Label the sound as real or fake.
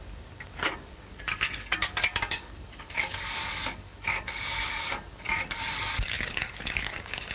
fake